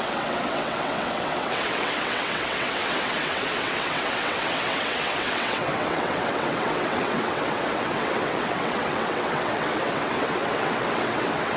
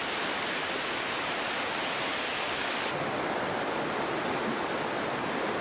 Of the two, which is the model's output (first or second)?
first